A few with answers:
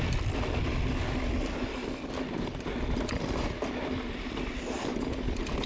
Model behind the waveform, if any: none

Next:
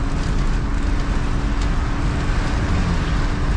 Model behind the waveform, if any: none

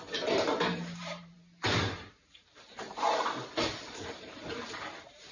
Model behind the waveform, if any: vocoder, BigVGAN v2